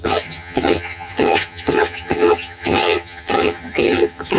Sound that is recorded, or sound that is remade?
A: remade